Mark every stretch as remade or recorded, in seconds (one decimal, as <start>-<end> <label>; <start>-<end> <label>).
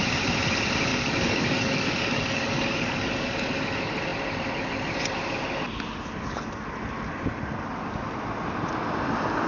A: 0.0-0.9 recorded; 0.9-3.6 remade; 3.6-9.5 recorded